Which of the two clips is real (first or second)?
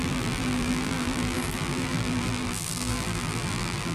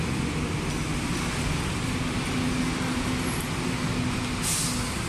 second